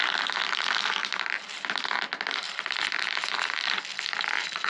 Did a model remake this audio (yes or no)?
no